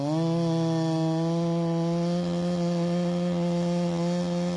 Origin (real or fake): real